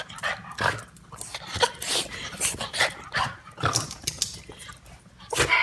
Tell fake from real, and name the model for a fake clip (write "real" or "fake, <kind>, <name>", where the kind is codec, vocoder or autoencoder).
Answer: real